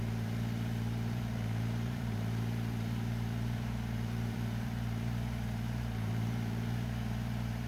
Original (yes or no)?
no